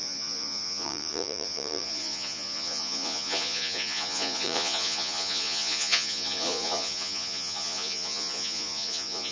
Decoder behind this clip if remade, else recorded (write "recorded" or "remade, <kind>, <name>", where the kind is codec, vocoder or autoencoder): remade, vocoder, Vocos